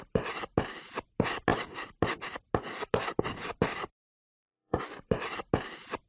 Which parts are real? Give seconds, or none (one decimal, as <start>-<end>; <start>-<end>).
0.0-4.0; 5.1-6.1